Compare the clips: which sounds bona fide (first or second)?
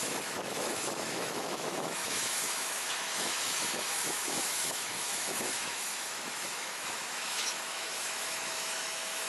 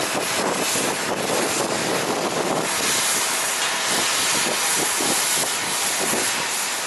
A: second